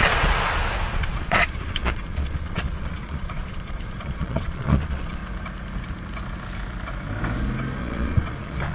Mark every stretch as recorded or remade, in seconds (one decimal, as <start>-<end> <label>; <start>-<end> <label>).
0.0-5.2 remade; 5.2-7.8 recorded; 7.8-8.7 remade